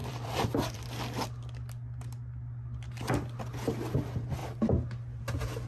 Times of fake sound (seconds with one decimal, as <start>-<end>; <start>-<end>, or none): 0.0-0.8